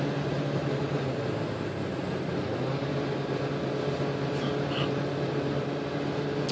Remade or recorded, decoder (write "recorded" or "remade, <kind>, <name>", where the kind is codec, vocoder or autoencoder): recorded